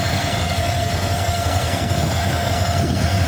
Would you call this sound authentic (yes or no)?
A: no